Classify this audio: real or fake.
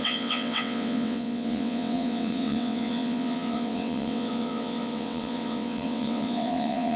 fake